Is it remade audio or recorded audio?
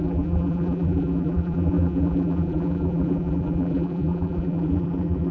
remade